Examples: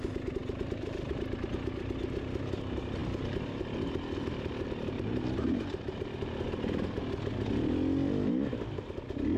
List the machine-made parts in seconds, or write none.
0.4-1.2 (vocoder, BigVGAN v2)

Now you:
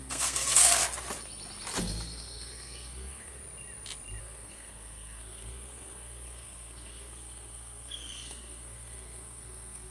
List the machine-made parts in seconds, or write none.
0.0-0.8 (codec, SNAC); 1.8-3.4; 4.2-9.9

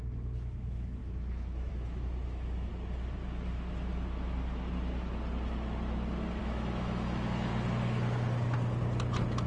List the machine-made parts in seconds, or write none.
0.0-2.7 (autoencoder, DAC-VAE); 6.4-7.5

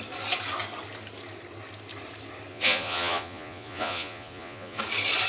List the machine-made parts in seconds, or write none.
2.5-4.8 (vocoder, Vocos)

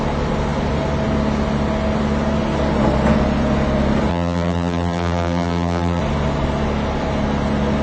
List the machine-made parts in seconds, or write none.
4.1-6.0 (vocoder, BigVGAN v2)

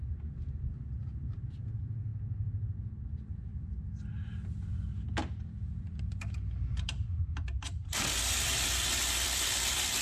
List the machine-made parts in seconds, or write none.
0.0-2.1 (vocoder, BigVGAN v2); 3.1-3.5; 4.1-10.0